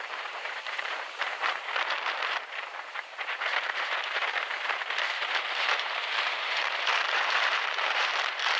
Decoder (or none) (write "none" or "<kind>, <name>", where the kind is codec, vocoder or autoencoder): vocoder, BigVGAN v2